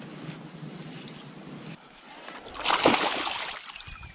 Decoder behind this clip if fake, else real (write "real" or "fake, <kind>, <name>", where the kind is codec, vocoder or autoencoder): real